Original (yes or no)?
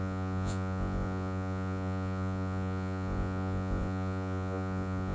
no